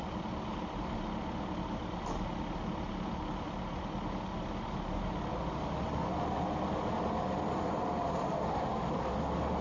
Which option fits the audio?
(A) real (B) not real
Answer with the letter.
A